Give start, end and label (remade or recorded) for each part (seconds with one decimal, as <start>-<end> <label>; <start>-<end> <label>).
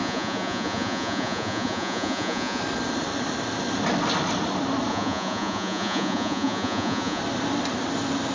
0.0-2.6 remade; 2.6-4.9 recorded; 4.9-7.2 remade; 7.2-8.3 recorded